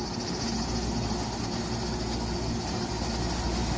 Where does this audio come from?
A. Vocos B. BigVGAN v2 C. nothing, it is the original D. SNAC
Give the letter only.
C